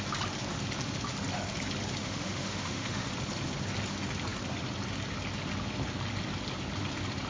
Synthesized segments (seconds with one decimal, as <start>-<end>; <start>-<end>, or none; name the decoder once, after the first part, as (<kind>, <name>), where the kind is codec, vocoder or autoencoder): 2.0-3.1 (autoencoder, DAC-VAE)